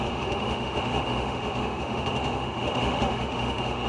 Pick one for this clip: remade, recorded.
remade